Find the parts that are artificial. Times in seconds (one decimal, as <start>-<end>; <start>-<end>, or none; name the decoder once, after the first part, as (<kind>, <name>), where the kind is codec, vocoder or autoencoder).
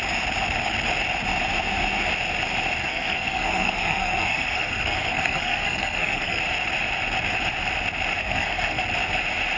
2.8-6.4 (codec, SNAC); 8.2-8.8